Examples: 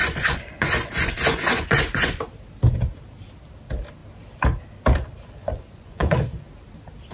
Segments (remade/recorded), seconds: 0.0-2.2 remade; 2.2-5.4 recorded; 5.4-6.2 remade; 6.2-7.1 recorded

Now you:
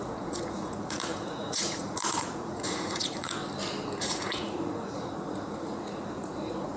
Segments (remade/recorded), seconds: 0.0-3.4 remade; 3.4-4.0 recorded; 4.0-6.8 remade

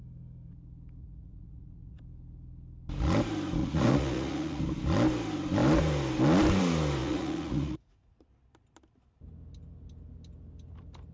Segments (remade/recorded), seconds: 0.0-1.0 recorded; 1.0-2.0 remade; 2.0-3.6 recorded; 3.6-4.6 remade; 4.6-7.0 recorded; 7.0-8.2 remade; 8.2-11.1 recorded

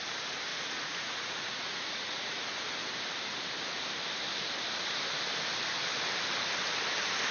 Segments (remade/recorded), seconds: 0.0-0.5 recorded; 0.5-2.4 remade; 2.4-7.3 recorded

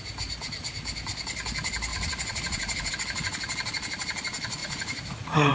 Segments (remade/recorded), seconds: 0.0-1.9 recorded; 1.9-2.9 remade; 2.9-4.6 recorded; 4.6-5.5 remade